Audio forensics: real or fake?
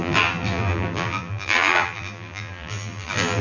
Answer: fake